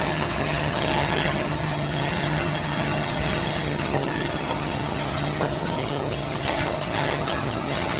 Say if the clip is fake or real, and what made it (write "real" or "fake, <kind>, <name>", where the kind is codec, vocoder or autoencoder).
fake, vocoder, HiFi-GAN